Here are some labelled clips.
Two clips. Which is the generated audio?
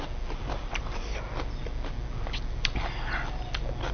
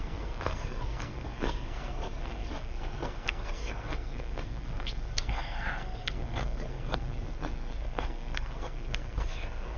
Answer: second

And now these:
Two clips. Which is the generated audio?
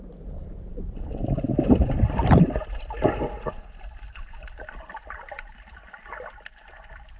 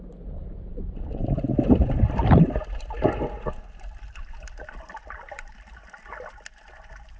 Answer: first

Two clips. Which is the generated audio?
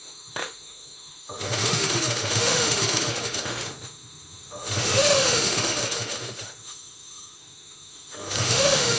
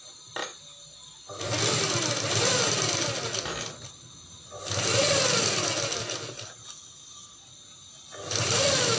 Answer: first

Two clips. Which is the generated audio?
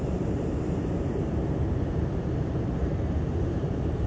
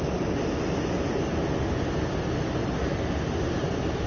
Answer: first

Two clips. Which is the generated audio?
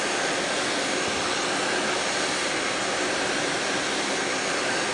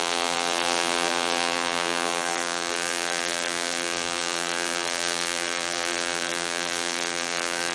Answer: second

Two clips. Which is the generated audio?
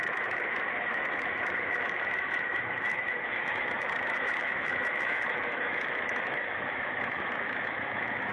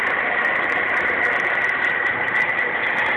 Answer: first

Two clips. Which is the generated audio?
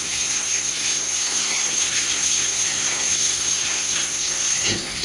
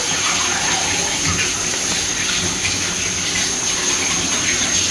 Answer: first